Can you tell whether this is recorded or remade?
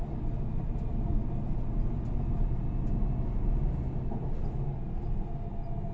recorded